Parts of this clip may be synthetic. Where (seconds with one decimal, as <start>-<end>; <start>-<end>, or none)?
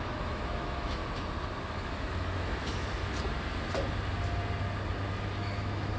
0.0-1.0; 1.6-3.0; 5.2-6.0